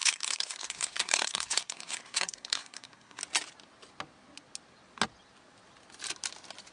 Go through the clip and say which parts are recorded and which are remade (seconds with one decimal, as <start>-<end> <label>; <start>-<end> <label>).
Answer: 0.0-3.2 remade; 3.2-6.7 recorded